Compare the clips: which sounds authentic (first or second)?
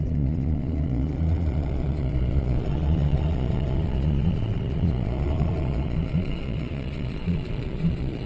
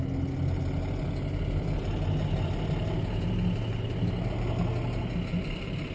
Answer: second